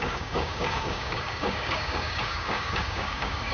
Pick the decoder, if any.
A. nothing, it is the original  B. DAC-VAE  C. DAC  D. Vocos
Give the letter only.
C